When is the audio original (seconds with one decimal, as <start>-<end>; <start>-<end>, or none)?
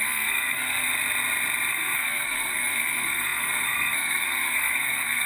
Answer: 0.9-1.7